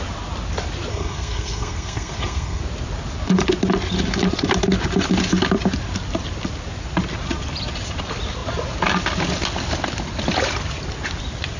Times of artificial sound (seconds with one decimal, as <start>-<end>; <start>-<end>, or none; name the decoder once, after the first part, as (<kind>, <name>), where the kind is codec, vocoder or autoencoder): 0.9-2.6 (codec, SNAC)